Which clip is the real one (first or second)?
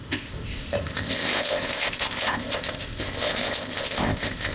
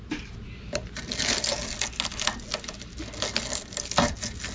second